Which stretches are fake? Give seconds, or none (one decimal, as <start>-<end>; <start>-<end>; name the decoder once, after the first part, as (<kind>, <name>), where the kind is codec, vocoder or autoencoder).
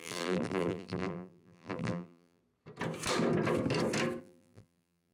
0.0-2.4 (vocoder, BigVGAN v2); 4.2-5.1